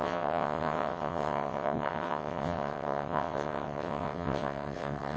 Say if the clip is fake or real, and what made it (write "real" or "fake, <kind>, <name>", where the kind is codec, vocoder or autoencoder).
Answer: fake, vocoder, WaveNeXt